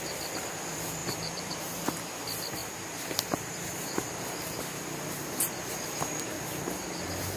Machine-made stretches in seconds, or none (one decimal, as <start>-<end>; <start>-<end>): 1.0-1.9; 2.6-4.2